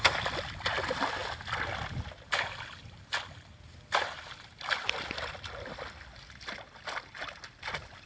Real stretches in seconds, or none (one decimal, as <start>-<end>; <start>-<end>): 0.0-8.1